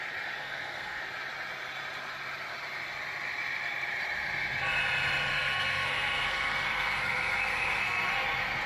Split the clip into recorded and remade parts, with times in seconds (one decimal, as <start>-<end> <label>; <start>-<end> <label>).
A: 0.0-0.4 recorded; 0.4-1.0 remade; 1.0-5.3 recorded; 5.3-8.1 remade; 8.1-8.7 recorded